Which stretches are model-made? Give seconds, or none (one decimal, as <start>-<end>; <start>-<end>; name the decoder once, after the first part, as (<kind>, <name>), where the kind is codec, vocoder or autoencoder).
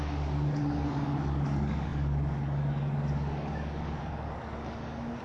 0.0-5.2 (codec, DAC)